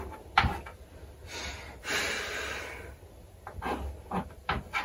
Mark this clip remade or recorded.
recorded